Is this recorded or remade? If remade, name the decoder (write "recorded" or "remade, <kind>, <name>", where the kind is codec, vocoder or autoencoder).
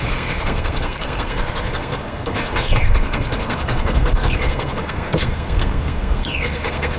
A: remade, codec, SNAC